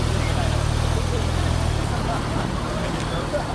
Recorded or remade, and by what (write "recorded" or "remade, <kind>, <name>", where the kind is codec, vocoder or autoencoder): recorded